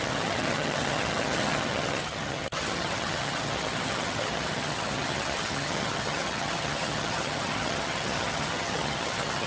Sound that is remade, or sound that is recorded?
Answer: remade